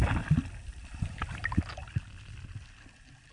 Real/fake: real